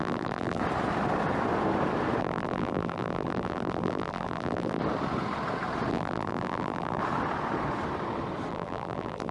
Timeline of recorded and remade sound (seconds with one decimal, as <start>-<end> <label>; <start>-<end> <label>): 0.0-0.6 remade; 0.6-2.2 recorded; 2.2-4.8 remade; 4.8-5.9 recorded; 5.9-7.0 remade; 7.0-8.5 recorded; 8.5-9.3 remade